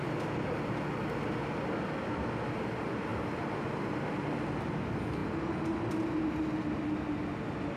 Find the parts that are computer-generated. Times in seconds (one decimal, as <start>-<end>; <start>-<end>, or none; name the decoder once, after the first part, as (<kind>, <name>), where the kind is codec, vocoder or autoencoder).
3.1-4.2 (vocoder, BigVGAN v2)